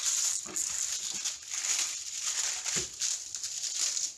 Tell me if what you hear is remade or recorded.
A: recorded